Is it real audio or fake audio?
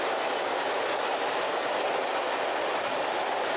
real